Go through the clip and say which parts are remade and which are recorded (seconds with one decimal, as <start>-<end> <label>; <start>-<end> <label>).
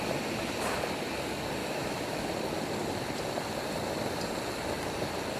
0.0-1.6 recorded; 1.6-2.3 remade; 2.3-5.4 recorded